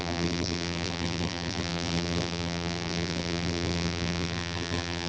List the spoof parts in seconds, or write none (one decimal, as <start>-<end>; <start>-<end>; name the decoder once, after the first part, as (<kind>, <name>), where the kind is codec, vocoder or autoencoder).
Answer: 0.0-5.1 (vocoder, BigVGAN v2)